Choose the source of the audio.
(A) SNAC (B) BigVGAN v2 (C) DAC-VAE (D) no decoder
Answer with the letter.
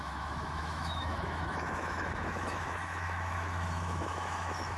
C